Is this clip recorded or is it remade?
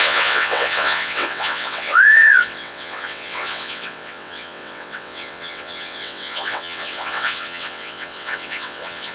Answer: remade